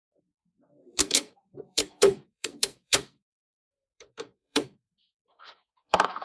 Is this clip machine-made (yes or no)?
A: yes